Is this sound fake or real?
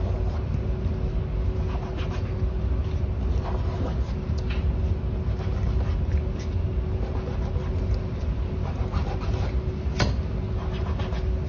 real